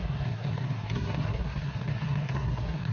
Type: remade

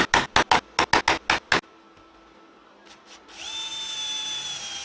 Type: recorded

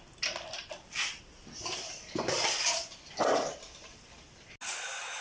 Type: recorded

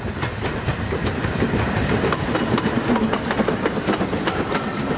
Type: recorded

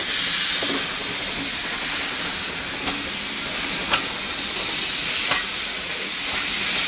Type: recorded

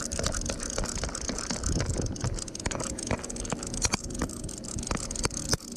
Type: recorded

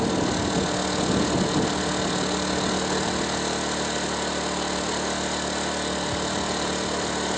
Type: recorded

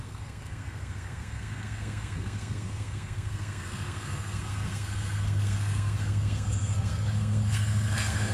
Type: remade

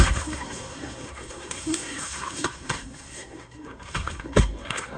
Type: remade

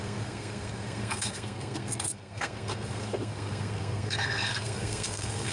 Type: remade